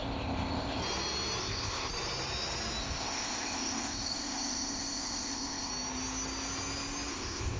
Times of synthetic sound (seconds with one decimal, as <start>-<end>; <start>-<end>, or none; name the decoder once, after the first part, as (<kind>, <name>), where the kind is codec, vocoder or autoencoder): 0.0-0.8 (codec, ZipCodec); 1.4-1.9; 2.8-5.7; 7.1-7.6